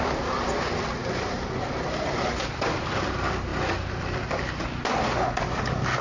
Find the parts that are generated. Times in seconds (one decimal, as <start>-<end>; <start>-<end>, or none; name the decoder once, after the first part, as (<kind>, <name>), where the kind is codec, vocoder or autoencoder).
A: 1.0-3.0 (vocoder, BigVGAN v2)